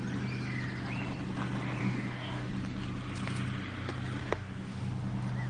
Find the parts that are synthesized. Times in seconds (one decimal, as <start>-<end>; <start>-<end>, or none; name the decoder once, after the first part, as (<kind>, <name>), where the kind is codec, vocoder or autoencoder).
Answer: 1.8-2.5 (codec, DAC); 4.2-4.8